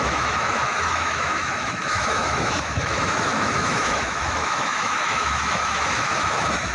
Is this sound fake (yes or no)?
yes